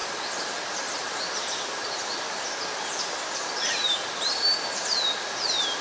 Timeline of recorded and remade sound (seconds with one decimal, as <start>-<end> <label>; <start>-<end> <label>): 0.0-5.8 recorded